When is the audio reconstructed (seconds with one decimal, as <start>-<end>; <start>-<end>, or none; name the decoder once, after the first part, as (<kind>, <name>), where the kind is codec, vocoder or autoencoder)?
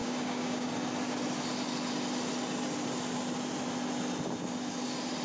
0.0-0.7 (codec, DAC)